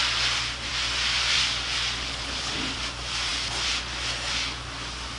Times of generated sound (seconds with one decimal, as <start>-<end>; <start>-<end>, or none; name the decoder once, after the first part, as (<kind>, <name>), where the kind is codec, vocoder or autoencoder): 2.0-2.5 (codec, HILCodec)